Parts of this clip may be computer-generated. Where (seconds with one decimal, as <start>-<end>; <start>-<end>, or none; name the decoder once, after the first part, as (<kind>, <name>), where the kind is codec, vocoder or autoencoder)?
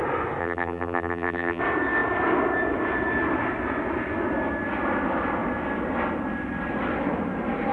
0.4-1.6 (vocoder, BigVGAN v2)